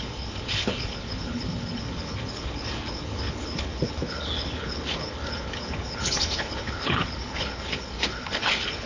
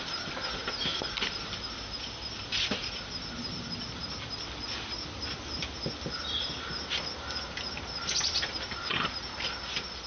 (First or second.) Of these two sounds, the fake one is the first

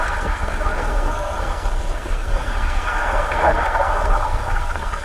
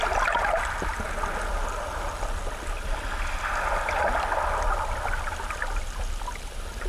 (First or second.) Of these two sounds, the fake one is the first